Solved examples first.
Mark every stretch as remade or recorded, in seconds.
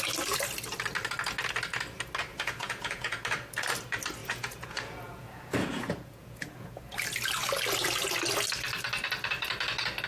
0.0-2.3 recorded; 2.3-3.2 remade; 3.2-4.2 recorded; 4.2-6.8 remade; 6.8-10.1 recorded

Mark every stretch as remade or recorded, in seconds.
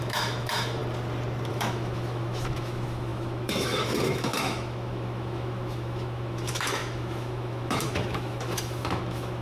0.0-0.8 remade; 0.8-1.5 recorded; 1.5-9.4 remade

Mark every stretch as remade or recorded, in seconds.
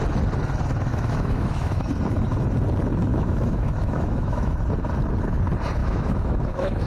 0.0-0.9 recorded; 0.9-1.8 remade; 1.8-3.1 recorded; 3.1-4.5 remade; 4.5-5.8 recorded; 5.8-6.9 remade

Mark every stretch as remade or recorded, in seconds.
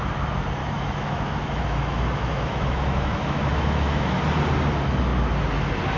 0.0-0.6 recorded; 0.6-4.2 remade; 4.2-6.0 recorded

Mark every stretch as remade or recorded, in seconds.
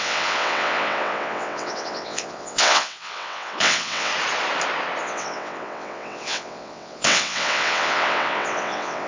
0.0-4.1 remade; 4.1-5.0 recorded; 5.0-9.1 remade